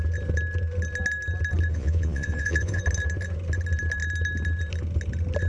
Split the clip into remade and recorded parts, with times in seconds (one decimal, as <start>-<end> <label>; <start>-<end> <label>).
0.0-1.7 recorded; 1.7-2.8 remade; 2.8-5.5 recorded

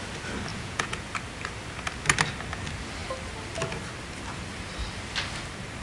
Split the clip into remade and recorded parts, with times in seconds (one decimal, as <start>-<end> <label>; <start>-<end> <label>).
0.0-0.5 recorded; 0.5-1.1 remade; 1.1-5.8 recorded

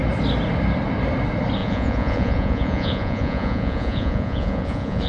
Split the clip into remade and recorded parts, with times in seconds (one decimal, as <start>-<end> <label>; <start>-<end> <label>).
0.0-1.6 recorded; 1.6-5.1 remade

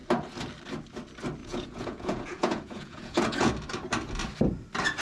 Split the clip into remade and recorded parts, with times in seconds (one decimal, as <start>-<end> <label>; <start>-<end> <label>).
0.0-1.4 recorded; 1.4-3.5 remade; 3.5-5.0 recorded

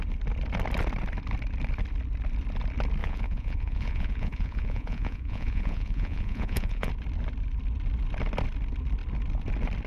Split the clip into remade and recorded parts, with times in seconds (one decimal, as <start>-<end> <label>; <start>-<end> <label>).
0.0-3.0 recorded; 3.0-6.9 remade; 6.9-9.9 recorded

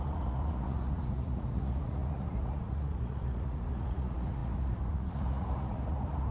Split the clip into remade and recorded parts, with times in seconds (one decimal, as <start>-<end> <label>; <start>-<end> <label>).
0.0-6.3 remade

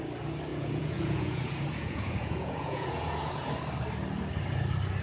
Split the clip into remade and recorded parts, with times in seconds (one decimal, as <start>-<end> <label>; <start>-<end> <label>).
0.0-0.5 recorded; 0.5-3.5 remade; 3.5-5.0 recorded